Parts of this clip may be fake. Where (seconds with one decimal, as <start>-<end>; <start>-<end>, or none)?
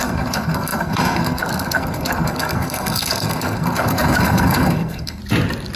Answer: 0.0-5.2